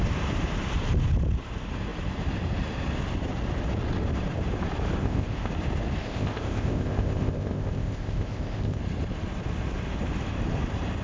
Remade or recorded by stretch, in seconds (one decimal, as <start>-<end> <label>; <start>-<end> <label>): 0.0-5.0 recorded; 5.0-5.5 remade; 5.5-6.0 recorded; 6.0-8.8 remade; 8.8-11.0 recorded